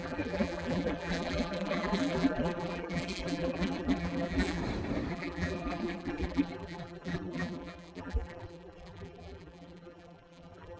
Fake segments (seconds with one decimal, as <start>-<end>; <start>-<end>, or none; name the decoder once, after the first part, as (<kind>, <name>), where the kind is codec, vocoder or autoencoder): 0.0-4.6 (vocoder, BigVGAN v2); 5.1-10.8